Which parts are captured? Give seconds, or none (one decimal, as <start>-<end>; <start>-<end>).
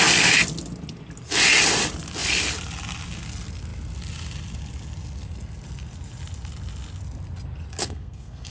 0.0-7.8